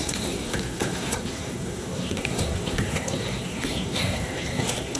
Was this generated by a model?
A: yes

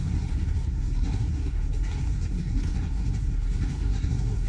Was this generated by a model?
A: yes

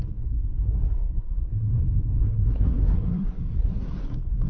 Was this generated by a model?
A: yes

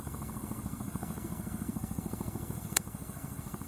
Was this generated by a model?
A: yes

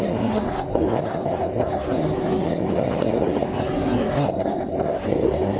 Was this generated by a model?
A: yes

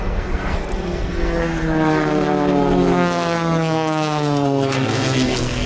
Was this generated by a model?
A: yes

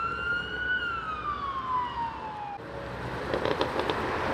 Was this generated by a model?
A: no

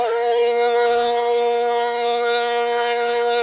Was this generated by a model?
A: yes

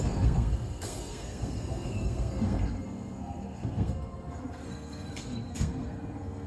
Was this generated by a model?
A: yes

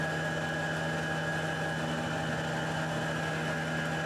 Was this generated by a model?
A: no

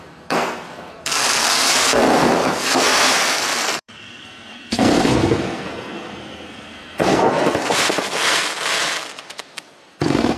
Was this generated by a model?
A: yes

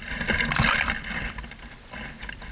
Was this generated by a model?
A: no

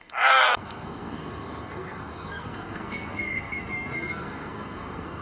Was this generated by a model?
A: yes